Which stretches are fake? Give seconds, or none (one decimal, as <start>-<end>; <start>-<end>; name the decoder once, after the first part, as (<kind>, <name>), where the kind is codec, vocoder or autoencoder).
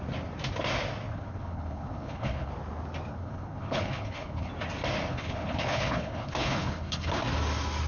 1.1-2.5 (codec, HILCodec); 3.1-4.5; 5.1-7.2